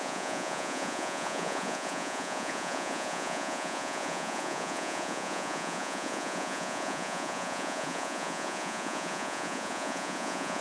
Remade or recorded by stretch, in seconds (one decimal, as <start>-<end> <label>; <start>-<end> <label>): 0.0-10.6 remade